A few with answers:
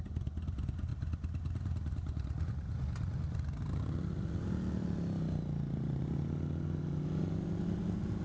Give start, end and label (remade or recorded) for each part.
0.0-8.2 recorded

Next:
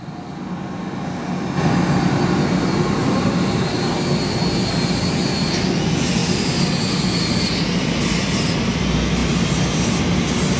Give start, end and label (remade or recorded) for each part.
0.0-3.0 recorded; 3.0-3.9 remade; 3.9-10.6 recorded

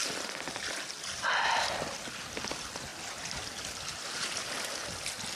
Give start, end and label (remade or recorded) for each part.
0.0-5.4 recorded